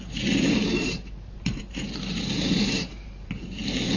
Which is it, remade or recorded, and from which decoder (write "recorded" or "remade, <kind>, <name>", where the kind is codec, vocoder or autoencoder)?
remade, vocoder, BigVGAN v2